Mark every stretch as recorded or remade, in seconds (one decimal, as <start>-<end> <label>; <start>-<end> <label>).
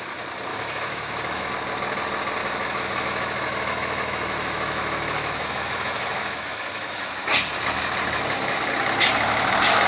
0.0-0.5 recorded; 0.5-1.5 remade; 1.5-2.4 recorded; 2.4-7.1 remade; 7.1-9.9 recorded